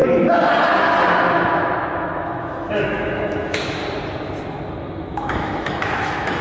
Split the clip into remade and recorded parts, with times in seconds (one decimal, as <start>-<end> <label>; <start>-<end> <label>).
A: 0.0-1.3 recorded; 1.3-3.8 remade; 3.8-4.8 recorded; 4.8-6.4 remade